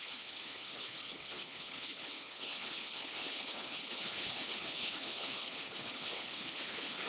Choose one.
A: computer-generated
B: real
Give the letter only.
A